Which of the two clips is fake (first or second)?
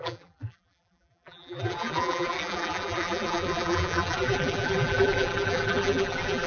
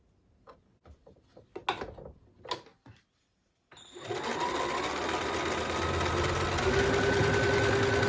first